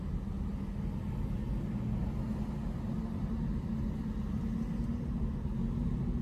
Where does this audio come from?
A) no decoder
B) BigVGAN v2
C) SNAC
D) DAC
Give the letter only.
A